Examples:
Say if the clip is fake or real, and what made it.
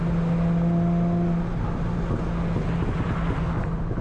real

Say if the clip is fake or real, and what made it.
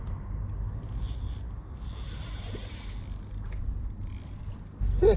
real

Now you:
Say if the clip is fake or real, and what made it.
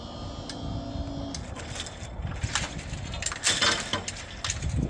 real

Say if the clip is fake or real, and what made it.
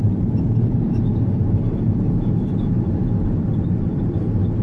real